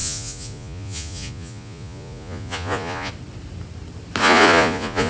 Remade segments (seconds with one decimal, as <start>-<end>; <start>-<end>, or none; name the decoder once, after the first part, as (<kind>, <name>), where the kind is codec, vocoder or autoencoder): 0.0-3.1 (vocoder, Vocos); 4.2-5.1